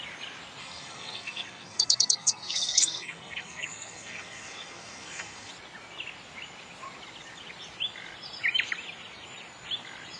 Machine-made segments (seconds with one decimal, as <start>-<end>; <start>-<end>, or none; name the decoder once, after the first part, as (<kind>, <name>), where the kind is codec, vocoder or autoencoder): 0.6-5.5 (codec, SNAC)